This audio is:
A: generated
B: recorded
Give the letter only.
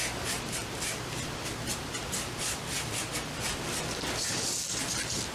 B